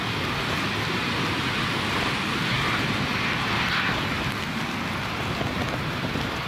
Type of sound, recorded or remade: recorded